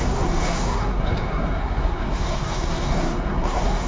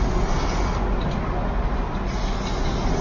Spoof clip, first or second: first